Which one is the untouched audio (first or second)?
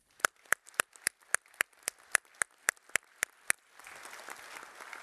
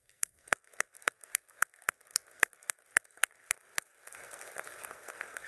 first